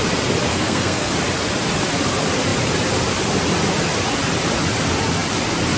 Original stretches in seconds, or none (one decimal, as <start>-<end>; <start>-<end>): 0.0-0.5; 1.1-5.8